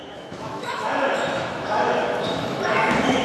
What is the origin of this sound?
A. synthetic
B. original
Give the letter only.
A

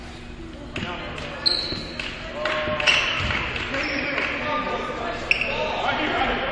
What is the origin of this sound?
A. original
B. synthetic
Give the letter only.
A